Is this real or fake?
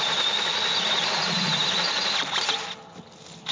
real